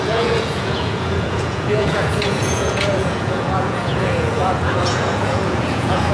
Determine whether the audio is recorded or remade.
remade